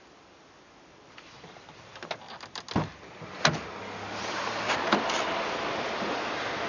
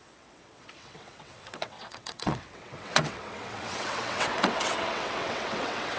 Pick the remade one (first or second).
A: second